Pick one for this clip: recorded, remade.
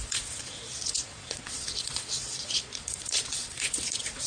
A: remade